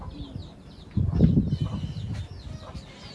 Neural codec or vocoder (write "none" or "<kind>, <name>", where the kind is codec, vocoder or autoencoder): none